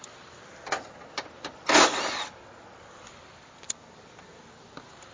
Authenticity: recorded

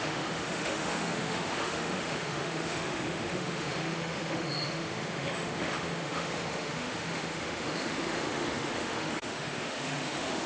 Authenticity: remade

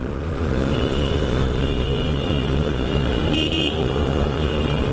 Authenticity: remade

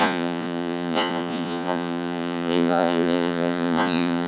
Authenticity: remade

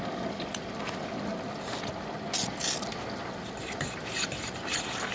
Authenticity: recorded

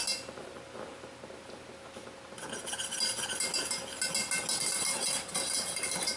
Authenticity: recorded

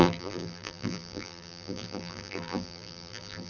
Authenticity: remade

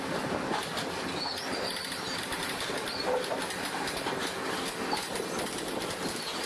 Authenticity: recorded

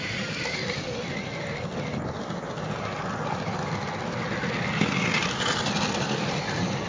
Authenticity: recorded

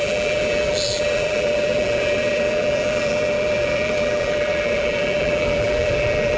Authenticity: remade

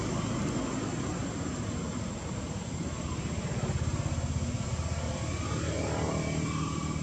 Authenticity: recorded